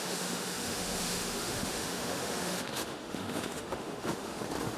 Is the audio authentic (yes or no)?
no